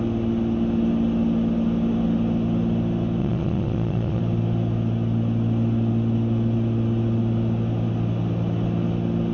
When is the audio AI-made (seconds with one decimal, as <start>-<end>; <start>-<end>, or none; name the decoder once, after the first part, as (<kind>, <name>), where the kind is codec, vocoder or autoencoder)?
3.2-4.2 (vocoder, Vocos)